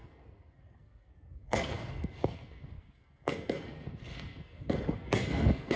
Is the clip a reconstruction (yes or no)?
yes